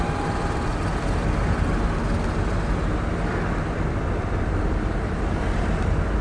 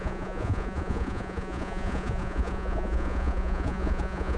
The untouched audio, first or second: first